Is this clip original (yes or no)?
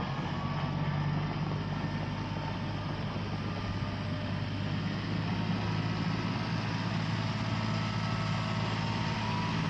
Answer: yes